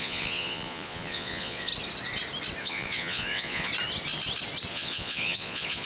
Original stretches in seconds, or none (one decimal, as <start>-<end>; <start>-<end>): 1.7-2.6; 3.7-4.7